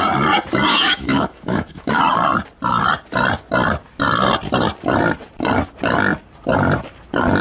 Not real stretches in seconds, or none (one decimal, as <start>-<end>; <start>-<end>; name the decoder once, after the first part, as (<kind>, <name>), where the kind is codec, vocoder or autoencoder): 0.7-2.0 (autoencoder, DAC-VAE)